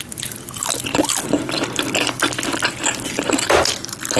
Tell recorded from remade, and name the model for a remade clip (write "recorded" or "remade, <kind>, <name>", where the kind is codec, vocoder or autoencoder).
recorded